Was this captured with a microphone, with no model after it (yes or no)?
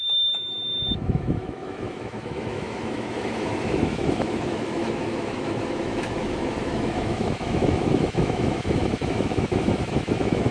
no